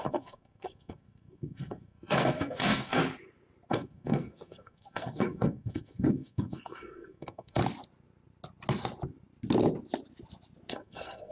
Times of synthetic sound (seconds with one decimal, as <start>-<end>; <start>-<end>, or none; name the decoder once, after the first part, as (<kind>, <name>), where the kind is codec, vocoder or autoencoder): 0.0-3.0 (codec, SNAC); 3.7-7.6; 10.7-11.3